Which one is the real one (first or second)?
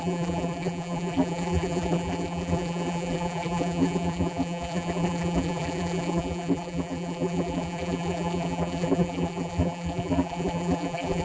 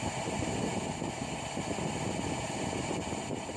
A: second